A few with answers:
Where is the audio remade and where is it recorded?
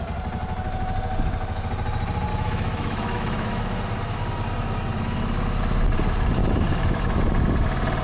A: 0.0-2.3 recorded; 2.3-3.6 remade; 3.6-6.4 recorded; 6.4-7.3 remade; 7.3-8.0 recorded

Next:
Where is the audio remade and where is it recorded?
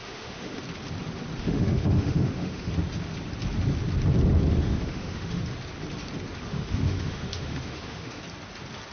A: 0.0-0.6 remade; 0.6-1.4 recorded; 1.4-2.7 remade; 2.7-4.6 recorded; 4.6-5.4 remade; 5.4-6.5 recorded; 6.5-8.2 remade; 8.2-8.9 recorded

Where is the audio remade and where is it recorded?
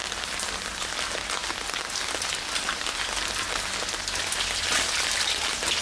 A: 0.0-5.8 recorded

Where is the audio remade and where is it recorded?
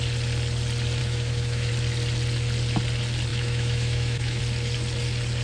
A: 0.0-1.0 recorded; 1.0-1.7 remade; 1.7-3.3 recorded; 3.3-4.4 remade; 4.4-5.4 recorded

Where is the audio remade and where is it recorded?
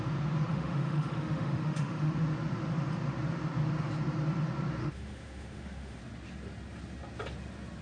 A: 0.0-0.5 recorded; 0.5-2.1 remade; 2.1-4.8 recorded; 4.8-6.0 remade; 6.0-7.8 recorded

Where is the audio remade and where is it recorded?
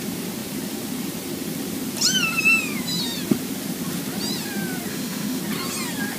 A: 0.0-4.9 recorded; 4.9-5.4 remade; 5.4-6.2 recorded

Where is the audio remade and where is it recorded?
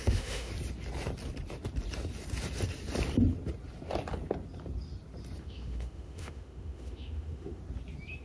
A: 0.0-0.5 remade; 0.5-5.4 recorded; 5.4-7.6 remade; 7.6-8.2 recorded